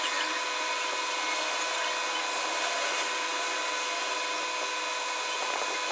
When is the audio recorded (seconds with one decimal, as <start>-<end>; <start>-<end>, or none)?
0.0-5.9